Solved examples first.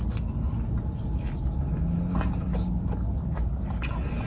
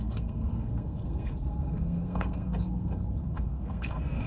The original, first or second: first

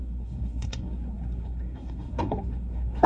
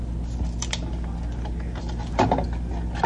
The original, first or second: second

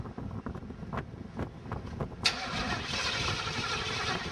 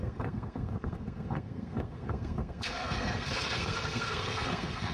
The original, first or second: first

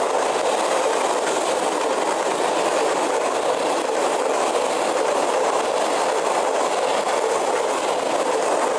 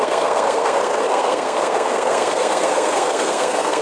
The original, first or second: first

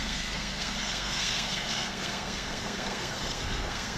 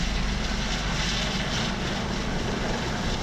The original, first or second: second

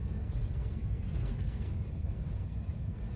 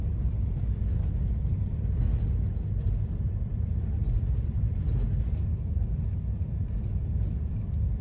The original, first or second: second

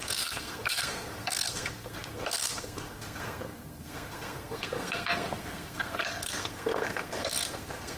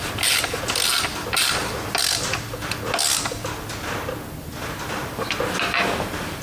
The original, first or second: second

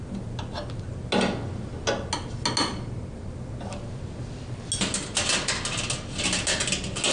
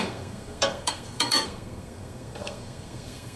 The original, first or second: first